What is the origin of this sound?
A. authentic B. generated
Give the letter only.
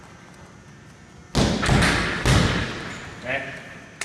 A